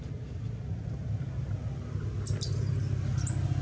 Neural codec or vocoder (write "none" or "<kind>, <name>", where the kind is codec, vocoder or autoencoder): none